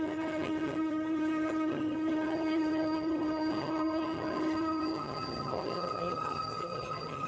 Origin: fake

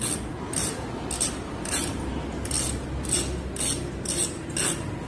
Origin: real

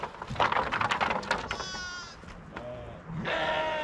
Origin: real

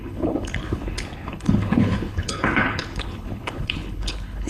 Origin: fake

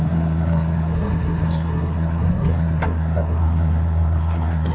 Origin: fake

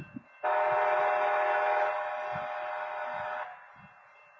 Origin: real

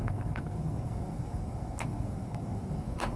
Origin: fake